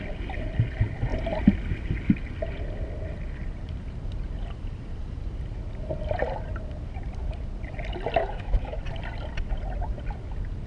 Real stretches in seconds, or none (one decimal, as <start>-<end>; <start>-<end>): 0.0-8.2; 8.8-10.7